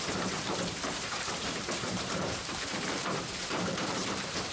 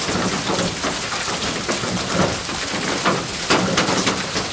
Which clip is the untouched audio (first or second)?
second